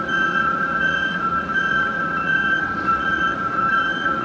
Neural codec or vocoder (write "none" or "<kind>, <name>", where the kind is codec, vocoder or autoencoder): vocoder, Vocos